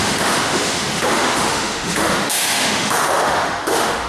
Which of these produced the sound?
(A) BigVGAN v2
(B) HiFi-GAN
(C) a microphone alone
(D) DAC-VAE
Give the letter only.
D